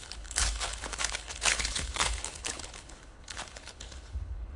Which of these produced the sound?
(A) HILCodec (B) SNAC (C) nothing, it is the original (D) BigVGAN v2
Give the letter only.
A